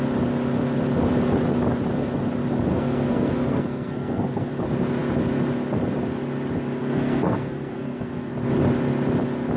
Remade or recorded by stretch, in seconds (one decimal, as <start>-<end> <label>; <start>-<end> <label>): 0.0-2.7 recorded; 2.7-4.5 remade; 4.5-6.8 recorded; 6.8-8.3 remade; 8.3-9.6 recorded